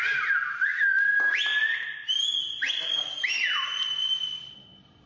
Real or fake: real